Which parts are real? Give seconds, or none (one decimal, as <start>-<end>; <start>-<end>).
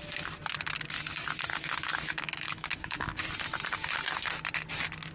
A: 0.0-1.5; 3.2-5.1